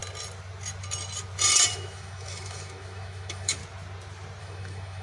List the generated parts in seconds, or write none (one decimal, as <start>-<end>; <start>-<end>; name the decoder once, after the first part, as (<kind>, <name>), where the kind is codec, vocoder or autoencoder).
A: 1.7-3.6 (autoencoder, DAC-VAE); 4.4-5.0